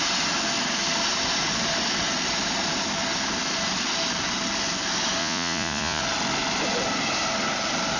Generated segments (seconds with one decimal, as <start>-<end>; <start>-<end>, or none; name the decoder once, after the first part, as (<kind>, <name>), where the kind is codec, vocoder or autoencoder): 5.2-6.0 (vocoder, Vocos)

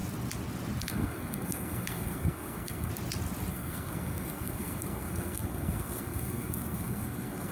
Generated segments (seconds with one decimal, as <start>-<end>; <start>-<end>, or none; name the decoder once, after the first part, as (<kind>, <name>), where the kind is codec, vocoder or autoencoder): 0.8-2.9 (codec, SNAC); 3.5-7.5